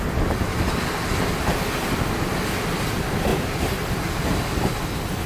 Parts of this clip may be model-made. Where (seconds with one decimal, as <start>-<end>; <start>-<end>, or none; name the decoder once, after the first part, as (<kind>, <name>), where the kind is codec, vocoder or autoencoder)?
none